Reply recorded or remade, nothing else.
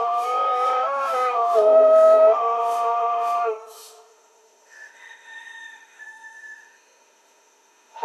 remade